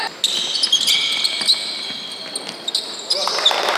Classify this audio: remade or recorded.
recorded